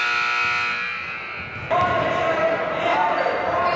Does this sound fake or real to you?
real